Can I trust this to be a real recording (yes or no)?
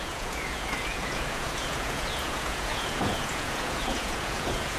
no